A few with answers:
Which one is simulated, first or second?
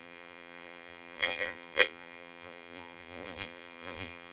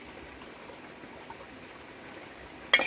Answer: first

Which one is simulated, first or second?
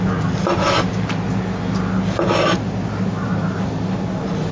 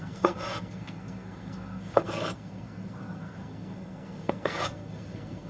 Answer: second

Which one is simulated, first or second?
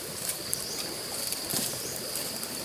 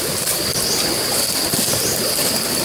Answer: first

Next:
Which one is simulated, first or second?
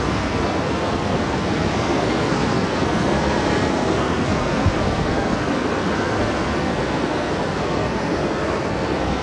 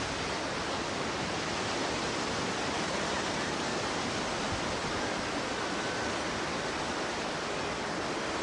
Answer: first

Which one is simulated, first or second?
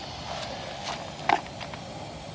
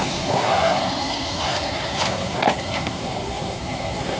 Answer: second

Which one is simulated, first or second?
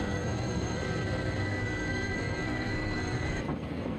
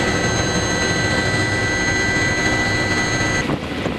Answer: first